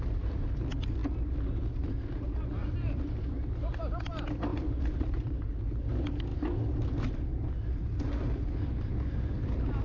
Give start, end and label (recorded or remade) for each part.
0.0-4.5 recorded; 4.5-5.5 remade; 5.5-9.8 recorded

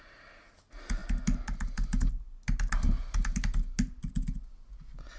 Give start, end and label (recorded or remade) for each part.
0.0-5.2 recorded